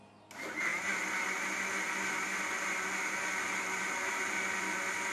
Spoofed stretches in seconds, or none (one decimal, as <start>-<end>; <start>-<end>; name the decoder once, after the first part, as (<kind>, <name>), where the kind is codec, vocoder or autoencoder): none